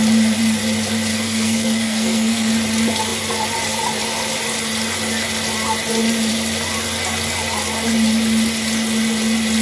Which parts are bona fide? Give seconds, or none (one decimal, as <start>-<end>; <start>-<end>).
0.0-1.1; 2.5-9.6